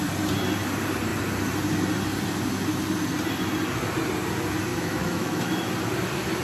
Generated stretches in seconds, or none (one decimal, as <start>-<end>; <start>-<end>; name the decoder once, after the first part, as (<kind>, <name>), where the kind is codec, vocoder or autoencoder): 4.7-5.7 (autoencoder, DAC-VAE)